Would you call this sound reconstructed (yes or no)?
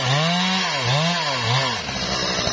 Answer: no